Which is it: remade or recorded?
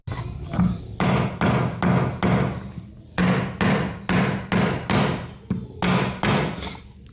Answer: recorded